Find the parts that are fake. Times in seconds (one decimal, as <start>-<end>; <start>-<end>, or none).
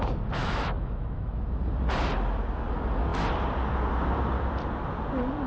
0.4-1.6